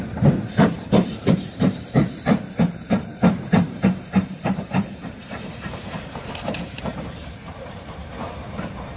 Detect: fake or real fake